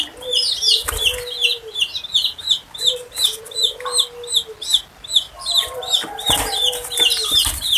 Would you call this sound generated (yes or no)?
no